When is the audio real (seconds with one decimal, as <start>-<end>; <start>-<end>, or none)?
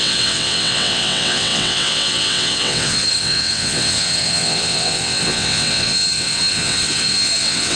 none